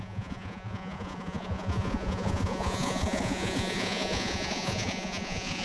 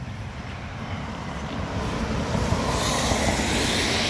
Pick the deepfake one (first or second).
first